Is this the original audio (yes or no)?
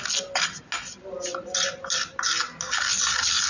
yes